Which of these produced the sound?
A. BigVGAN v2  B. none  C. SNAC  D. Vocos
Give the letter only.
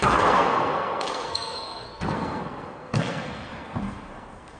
C